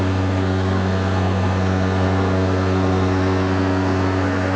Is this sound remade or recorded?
remade